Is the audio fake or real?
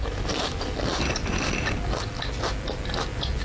real